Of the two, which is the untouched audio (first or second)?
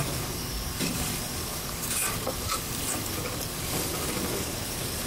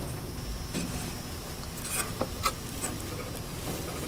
second